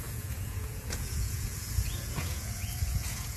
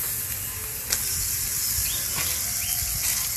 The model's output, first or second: first